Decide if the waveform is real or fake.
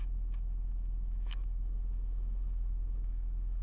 fake